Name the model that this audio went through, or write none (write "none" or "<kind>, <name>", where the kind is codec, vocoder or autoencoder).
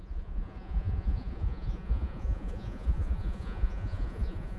vocoder, Vocos